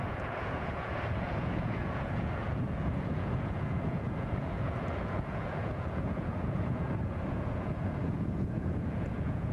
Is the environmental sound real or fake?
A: fake